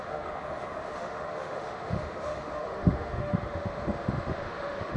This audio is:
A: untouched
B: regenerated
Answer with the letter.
B